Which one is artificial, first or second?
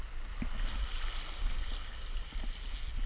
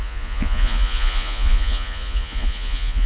second